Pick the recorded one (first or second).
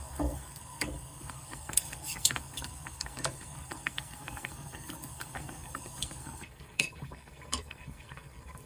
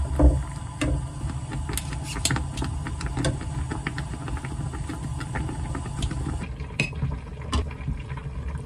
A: second